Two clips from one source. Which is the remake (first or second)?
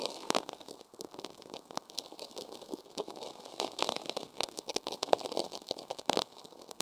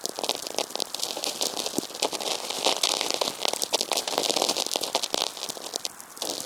first